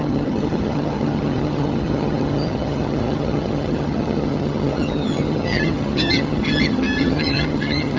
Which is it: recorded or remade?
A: remade